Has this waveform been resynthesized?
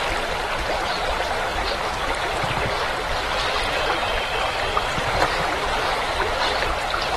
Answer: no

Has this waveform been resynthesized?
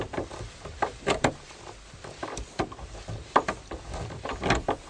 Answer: yes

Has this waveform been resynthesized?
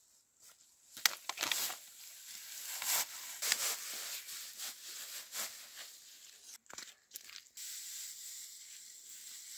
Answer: no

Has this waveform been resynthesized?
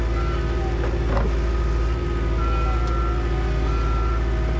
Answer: no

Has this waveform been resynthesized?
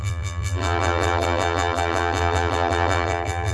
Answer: yes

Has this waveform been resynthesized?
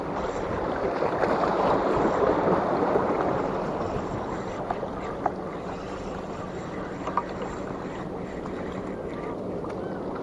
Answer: no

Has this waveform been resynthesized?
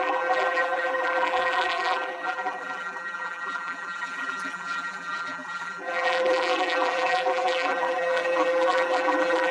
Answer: yes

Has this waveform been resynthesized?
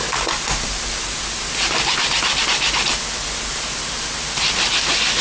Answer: no